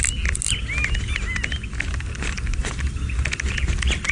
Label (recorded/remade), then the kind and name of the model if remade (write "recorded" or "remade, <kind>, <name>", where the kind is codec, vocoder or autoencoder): recorded